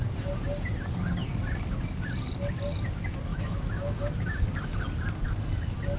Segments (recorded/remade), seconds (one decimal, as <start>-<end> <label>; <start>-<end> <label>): 0.0-3.3 recorded; 3.3-4.0 remade; 4.0-6.0 recorded